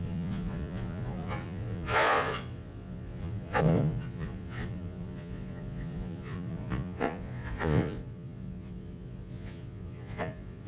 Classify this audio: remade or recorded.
remade